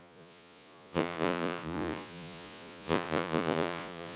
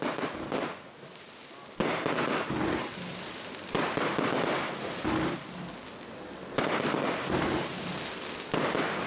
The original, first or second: second